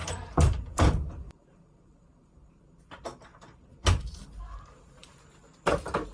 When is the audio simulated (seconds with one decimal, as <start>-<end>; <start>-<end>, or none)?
0.0-2.3; 3.3-5.2